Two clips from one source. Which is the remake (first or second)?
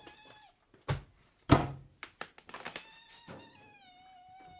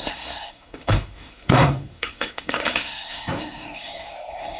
second